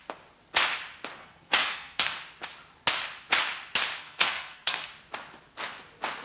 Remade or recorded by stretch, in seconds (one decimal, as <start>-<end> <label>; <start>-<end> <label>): 0.0-1.2 recorded; 1.2-2.2 remade; 2.2-4.0 recorded; 4.0-4.9 remade; 4.9-6.2 recorded